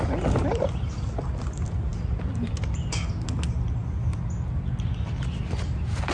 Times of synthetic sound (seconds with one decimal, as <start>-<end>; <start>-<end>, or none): none